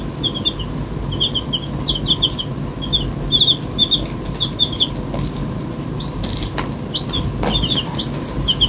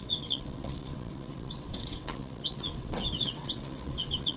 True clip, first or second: first